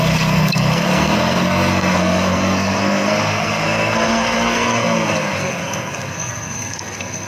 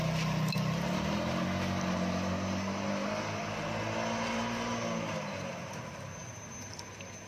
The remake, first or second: first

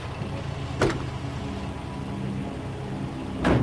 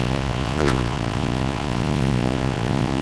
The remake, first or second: second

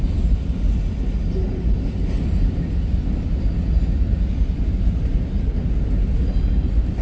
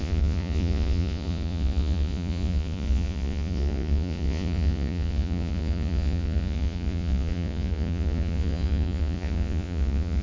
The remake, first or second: second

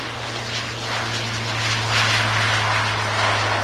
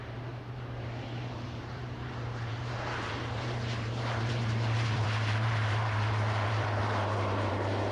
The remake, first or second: second